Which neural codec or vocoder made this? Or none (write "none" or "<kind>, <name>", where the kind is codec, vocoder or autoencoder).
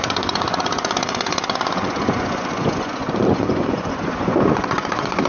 vocoder, Vocos